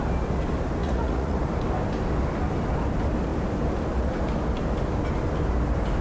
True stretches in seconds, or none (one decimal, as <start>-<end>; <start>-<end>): 0.0-0.8; 1.4-6.0